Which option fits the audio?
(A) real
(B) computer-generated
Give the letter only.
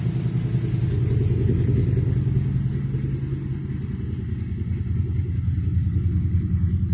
A